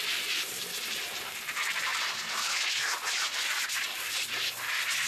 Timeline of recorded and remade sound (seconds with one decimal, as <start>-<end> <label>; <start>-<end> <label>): 0.0-1.9 remade; 1.9-5.1 recorded